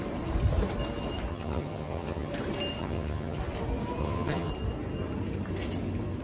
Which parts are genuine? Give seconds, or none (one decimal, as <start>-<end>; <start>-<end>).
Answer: 0.0-1.3; 2.3-2.8; 3.4-4.0; 4.5-6.2

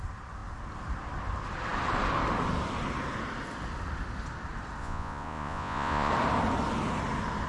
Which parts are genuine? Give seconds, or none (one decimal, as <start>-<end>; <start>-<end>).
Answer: 0.0-4.8; 6.1-7.5

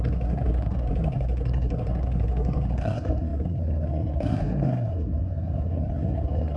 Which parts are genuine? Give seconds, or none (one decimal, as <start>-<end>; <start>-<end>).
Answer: none

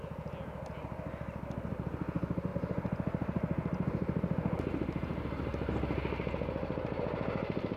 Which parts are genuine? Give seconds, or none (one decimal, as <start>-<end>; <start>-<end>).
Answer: 0.0-7.8

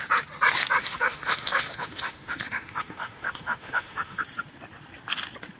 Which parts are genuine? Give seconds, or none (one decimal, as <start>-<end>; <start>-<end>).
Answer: 0.0-0.8; 4.2-5.6

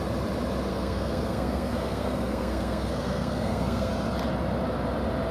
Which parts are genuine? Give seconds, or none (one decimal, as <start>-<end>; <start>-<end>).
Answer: 0.0-0.7; 3.9-5.3